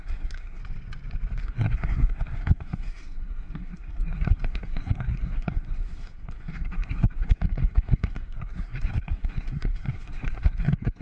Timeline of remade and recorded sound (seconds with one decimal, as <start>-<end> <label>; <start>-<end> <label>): 0.0-0.6 remade; 0.6-1.4 recorded; 1.4-11.0 remade